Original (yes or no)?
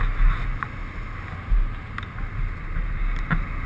yes